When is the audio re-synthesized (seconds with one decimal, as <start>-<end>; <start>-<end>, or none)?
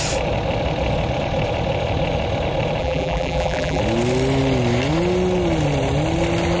2.8-3.8